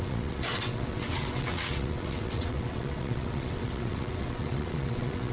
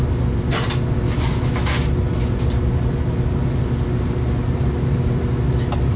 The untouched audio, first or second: second